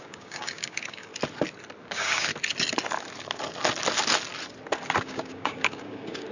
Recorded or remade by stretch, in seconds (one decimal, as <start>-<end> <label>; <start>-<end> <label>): 0.0-1.1 remade; 1.1-1.8 recorded; 1.8-2.3 remade; 2.3-5.0 recorded; 5.0-6.3 remade